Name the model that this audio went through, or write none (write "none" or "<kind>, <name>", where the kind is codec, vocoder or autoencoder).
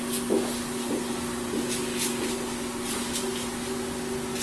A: none